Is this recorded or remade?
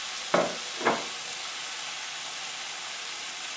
recorded